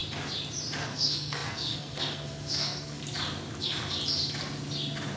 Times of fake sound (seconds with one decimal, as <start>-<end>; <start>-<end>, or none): 0.8-3.0; 3.6-4.0